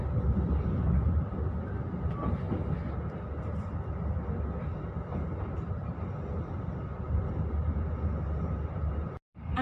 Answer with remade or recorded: recorded